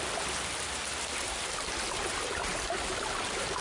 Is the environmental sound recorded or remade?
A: recorded